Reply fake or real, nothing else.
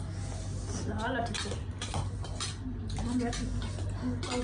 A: real